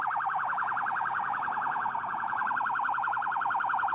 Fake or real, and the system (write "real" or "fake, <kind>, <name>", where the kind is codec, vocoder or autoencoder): fake, vocoder, Vocos